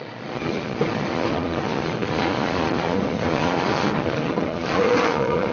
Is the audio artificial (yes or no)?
yes